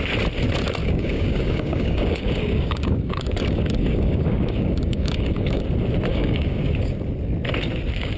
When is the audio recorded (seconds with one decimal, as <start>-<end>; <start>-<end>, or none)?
0.0-0.8; 5.6-6.1; 6.6-8.2